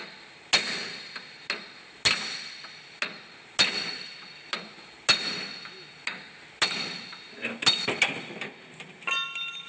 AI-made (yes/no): no